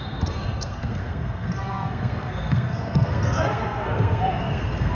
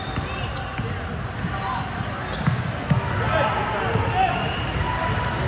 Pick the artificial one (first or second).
first